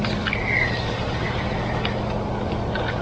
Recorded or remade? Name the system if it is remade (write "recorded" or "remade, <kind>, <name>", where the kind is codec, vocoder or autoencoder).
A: recorded